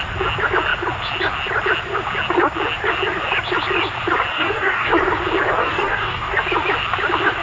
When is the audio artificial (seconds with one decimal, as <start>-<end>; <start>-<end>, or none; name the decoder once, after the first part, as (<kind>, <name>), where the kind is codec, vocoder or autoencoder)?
4.3-4.9 (codec, DAC); 5.6-6.3